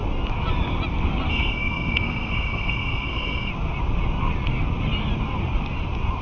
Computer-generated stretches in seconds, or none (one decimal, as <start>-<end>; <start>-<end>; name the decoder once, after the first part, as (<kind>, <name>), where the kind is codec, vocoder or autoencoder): 1.3-3.5 (codec, SNAC)